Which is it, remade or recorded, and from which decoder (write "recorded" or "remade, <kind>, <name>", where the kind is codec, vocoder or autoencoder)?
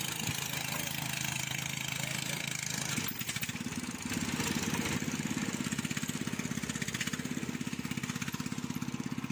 recorded